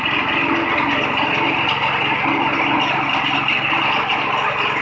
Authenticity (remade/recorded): recorded